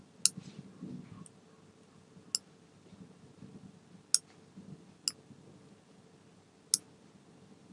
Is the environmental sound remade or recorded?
recorded